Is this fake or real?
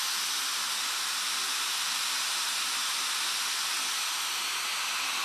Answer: real